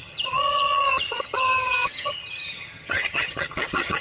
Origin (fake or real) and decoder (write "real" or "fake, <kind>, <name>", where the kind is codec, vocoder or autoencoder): fake, vocoder, HiFi-GAN